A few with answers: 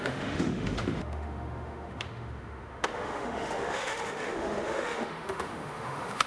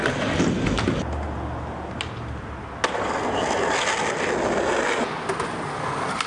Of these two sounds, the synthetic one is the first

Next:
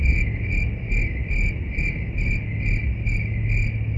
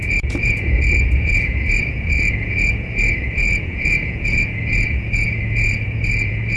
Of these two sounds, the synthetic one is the second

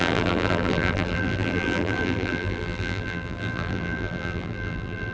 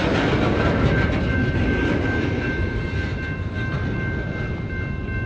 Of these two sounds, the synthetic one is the first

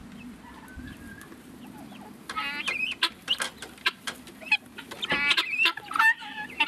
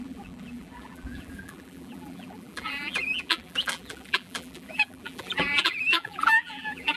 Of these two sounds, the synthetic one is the second